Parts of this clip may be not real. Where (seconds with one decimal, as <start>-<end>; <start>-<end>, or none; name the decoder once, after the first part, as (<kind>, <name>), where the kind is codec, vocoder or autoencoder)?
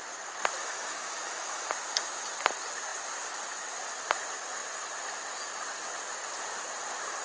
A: 0.6-1.7 (autoencoder, DAC-VAE)